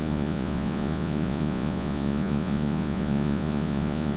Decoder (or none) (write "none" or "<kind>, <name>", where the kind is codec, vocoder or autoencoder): vocoder, Vocos